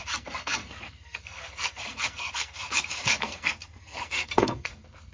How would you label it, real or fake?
fake